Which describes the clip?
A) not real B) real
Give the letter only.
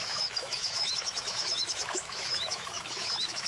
A